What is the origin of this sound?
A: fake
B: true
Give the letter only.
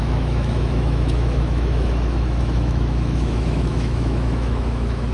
A